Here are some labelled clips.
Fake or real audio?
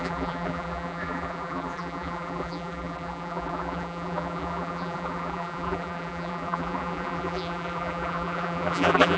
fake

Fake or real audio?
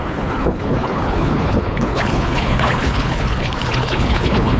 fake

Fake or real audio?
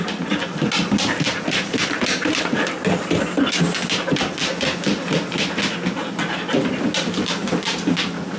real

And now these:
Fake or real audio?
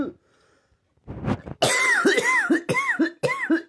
real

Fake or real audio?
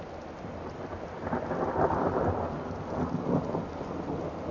real